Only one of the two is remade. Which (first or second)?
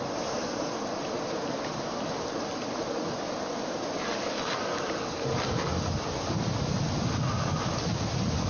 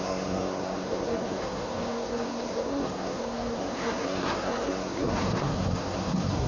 second